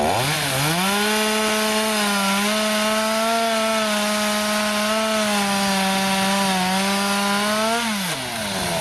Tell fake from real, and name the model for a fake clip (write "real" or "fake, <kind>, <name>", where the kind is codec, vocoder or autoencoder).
real